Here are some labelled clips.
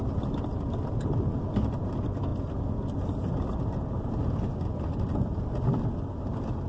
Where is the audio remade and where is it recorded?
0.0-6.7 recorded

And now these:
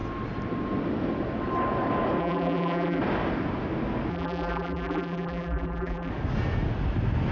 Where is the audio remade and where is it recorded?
0.0-2.2 recorded; 2.2-3.0 remade; 3.0-4.1 recorded; 4.1-6.1 remade; 6.1-7.3 recorded